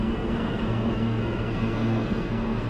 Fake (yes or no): yes